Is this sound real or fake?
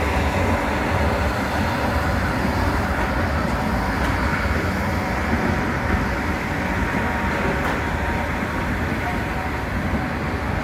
real